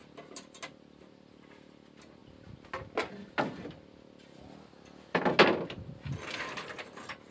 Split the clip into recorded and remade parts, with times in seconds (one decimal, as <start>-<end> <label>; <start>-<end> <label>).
0.0-7.3 recorded